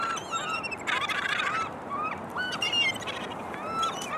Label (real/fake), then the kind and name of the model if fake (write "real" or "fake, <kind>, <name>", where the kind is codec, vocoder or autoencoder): real